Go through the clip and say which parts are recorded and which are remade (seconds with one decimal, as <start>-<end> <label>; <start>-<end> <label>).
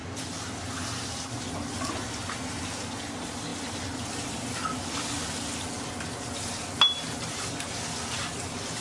0.0-8.8 recorded